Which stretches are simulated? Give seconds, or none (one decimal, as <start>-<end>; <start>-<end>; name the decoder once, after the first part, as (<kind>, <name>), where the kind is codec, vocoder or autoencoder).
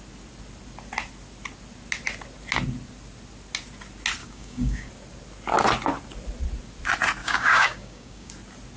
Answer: 4.2-4.9 (codec, DAC); 7.2-8.3